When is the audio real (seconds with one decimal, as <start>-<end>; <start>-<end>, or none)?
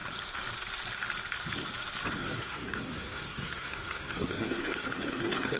0.0-2.2